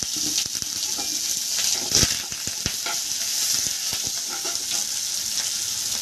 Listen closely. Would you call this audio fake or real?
real